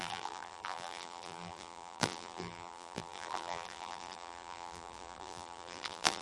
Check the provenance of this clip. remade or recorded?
remade